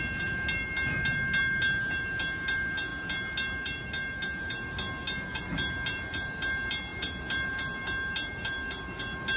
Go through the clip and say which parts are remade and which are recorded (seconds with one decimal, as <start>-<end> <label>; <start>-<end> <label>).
0.0-9.4 recorded